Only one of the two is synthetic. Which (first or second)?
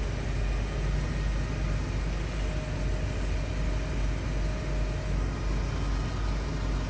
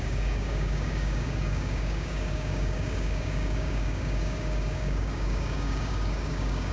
second